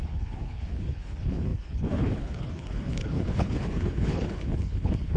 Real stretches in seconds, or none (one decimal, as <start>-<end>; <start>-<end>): none